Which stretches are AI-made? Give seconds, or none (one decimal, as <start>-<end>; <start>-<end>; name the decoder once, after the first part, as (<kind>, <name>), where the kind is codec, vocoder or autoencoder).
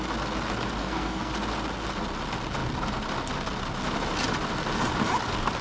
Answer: 0.8-1.3 (codec, SNAC)